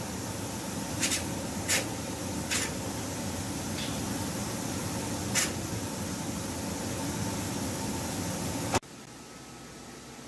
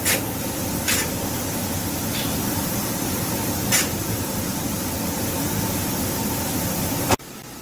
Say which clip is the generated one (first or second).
second